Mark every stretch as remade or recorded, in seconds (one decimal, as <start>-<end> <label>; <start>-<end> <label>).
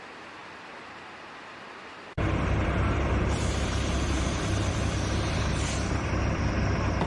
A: 0.0-7.1 remade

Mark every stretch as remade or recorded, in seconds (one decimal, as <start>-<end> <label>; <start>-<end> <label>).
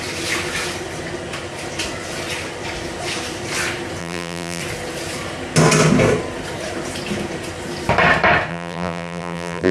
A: 0.0-4.0 recorded; 4.0-4.6 remade; 4.6-8.5 recorded; 8.5-9.7 remade